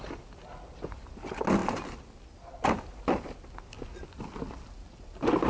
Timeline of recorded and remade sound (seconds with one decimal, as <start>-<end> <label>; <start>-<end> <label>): 0.0-5.5 recorded